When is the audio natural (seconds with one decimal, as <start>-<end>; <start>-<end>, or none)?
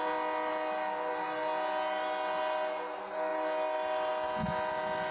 0.0-5.1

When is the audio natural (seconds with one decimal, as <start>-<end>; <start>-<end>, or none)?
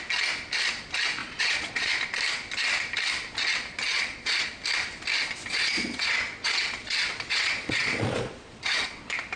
0.0-1.2; 1.9-3.9; 4.5-5.5; 9.0-9.4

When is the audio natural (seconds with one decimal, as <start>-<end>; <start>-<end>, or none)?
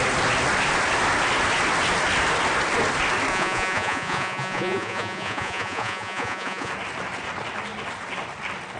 0.0-3.3; 6.7-8.8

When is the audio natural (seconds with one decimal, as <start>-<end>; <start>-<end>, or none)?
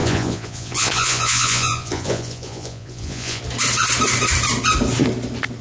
3.4-5.6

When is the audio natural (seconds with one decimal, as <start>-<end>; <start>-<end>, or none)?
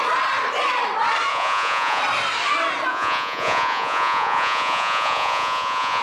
0.0-1.3; 2.0-2.9